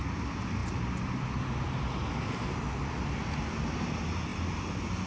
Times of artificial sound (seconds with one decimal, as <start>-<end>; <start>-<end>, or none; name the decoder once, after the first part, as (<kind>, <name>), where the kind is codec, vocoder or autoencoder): none